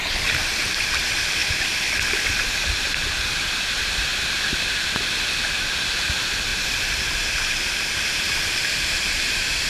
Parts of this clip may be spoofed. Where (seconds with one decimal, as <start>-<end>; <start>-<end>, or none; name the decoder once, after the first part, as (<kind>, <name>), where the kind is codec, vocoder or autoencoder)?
0.0-4.1 (vocoder, BigVGAN v2); 5.5-9.7

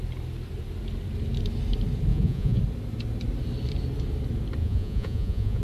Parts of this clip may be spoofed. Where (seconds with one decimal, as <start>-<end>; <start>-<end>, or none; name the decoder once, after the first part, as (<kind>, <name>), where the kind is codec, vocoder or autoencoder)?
2.1-2.6 (vocoder, Vocos); 4.6-5.6

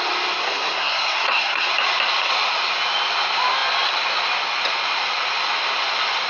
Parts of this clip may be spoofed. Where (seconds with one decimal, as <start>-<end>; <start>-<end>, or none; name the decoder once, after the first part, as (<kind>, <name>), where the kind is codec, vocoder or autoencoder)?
0.4-1.7 (codec, SNAC)

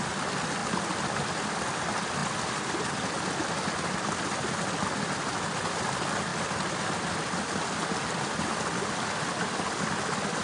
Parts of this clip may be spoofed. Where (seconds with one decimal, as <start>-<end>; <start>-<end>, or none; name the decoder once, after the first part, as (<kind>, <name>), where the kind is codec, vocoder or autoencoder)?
none

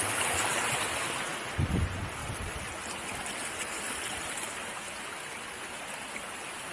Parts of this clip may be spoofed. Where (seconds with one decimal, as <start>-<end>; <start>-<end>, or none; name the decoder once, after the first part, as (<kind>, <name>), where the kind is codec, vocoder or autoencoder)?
5.2-5.7 (vocoder, BigVGAN v2)

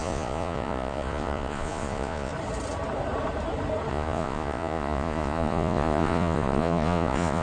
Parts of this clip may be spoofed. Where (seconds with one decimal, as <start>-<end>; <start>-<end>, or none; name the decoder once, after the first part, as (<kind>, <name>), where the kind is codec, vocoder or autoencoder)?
0.0-2.3 (vocoder, Vocos); 3.9-7.4